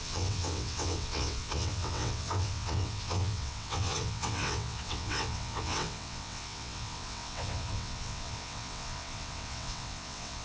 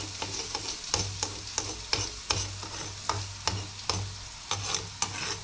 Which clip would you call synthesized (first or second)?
first